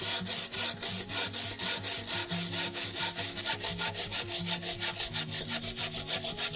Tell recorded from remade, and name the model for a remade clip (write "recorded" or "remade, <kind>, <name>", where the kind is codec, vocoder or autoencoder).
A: recorded